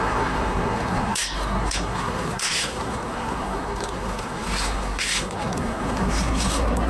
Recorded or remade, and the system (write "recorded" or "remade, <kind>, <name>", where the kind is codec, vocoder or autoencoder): remade, codec, SNAC